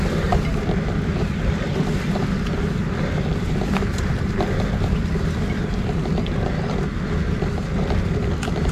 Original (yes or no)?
yes